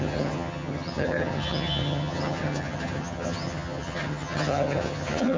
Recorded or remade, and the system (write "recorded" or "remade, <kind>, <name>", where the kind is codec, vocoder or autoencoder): remade, vocoder, HiFi-GAN